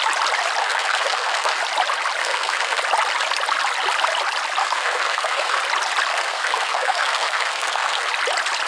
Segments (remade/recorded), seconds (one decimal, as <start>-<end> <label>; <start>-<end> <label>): 0.0-0.6 recorded; 0.6-1.6 remade; 1.6-2.2 recorded; 2.2-2.8 remade; 2.8-4.6 recorded; 4.6-5.6 remade; 5.6-6.1 recorded; 6.1-8.1 remade; 8.1-8.7 recorded